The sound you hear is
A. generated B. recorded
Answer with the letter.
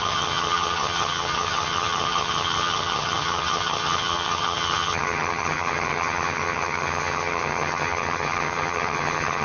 A